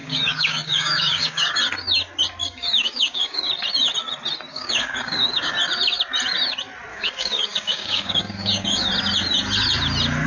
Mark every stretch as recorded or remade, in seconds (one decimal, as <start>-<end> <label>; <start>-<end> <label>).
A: 0.0-1.6 remade; 1.6-2.4 recorded; 2.4-3.5 remade; 3.5-4.5 recorded; 4.5-5.5 remade; 5.5-6.9 recorded; 6.9-8.9 remade; 8.9-10.3 recorded